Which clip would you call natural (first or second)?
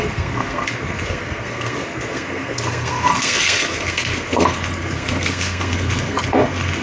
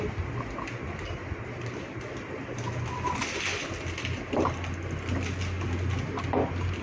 second